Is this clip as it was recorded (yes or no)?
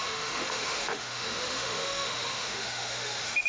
no